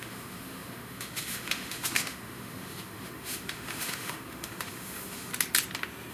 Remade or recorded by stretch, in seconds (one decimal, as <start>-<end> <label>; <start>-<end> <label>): 0.0-5.3 remade; 5.3-6.1 recorded